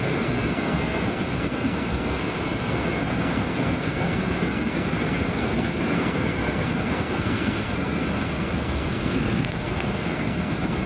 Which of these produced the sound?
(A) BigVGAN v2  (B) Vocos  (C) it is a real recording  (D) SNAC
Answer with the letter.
D